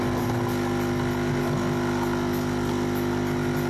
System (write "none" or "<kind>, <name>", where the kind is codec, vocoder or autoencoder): none